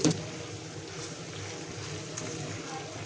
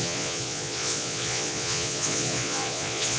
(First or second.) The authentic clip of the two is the first